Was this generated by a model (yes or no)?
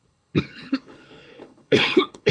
yes